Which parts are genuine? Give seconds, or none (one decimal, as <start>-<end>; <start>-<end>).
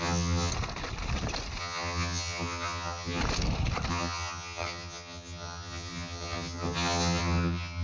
0.5-1.6; 3.2-3.9